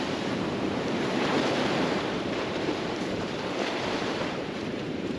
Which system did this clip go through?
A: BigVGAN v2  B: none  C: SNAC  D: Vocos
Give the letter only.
A